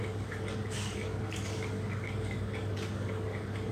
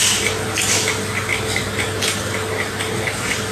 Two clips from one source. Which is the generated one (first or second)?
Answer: first